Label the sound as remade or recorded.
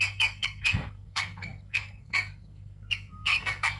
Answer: remade